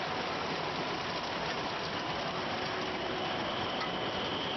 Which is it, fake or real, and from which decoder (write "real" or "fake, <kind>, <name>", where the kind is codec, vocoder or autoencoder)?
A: real